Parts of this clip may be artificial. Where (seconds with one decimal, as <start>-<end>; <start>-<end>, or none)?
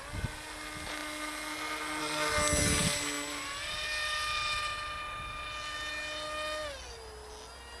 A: none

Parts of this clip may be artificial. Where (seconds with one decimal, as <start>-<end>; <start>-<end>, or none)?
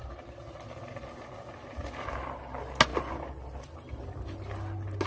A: none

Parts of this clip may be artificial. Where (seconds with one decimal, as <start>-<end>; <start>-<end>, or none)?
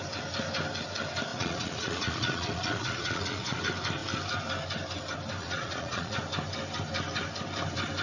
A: 1.3-3.6; 5.4-6.2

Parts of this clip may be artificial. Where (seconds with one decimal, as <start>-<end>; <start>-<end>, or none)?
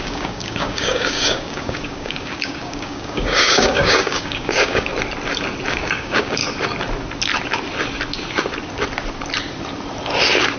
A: 0.0-4.9; 5.7-6.4